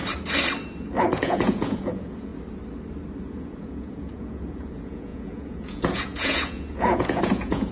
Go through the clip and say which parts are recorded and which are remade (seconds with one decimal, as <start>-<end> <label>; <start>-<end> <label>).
0.0-1.0 recorded; 1.0-2.3 remade; 2.3-3.2 recorded; 3.2-7.7 remade